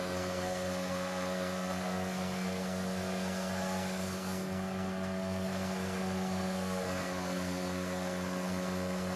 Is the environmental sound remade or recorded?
remade